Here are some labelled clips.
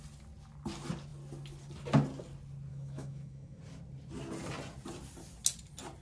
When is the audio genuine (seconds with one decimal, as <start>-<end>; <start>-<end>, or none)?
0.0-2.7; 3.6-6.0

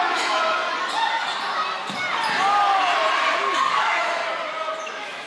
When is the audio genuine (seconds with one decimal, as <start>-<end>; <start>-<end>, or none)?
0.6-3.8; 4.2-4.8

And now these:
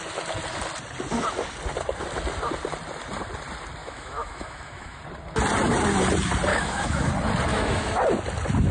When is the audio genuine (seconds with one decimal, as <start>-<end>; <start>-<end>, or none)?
0.0-3.8; 5.0-6.5; 7.1-7.5; 8.0-8.7

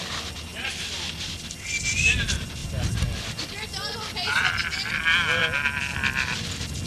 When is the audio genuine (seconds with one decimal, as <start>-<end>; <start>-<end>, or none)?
0.0-6.9